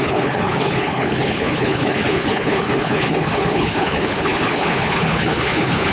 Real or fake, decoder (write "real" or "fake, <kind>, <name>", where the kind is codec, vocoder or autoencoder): fake, codec, HILCodec